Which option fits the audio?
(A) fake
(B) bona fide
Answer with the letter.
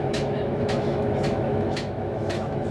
A